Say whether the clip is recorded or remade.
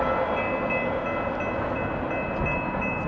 recorded